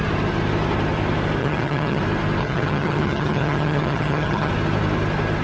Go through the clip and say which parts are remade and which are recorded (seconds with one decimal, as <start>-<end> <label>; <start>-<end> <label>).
0.0-1.4 recorded; 1.4-2.0 remade; 2.0-2.4 recorded; 2.4-4.5 remade; 4.5-5.4 recorded